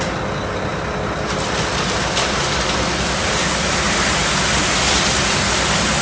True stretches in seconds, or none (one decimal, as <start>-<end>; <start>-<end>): 0.0-6.0